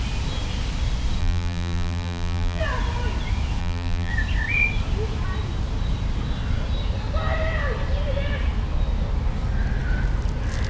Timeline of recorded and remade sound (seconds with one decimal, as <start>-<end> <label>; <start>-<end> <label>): 0.0-1.2 recorded; 1.2-2.6 remade; 2.6-3.6 recorded; 3.6-4.1 remade; 4.1-10.7 recorded